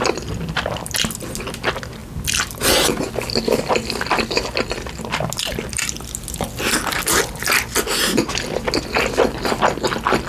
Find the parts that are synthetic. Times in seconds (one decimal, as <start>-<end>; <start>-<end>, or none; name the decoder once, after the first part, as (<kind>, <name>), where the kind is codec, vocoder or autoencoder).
none